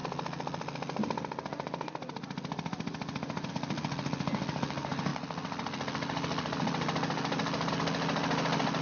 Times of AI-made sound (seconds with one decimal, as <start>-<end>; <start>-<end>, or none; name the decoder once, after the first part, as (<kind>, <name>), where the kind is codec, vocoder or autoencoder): none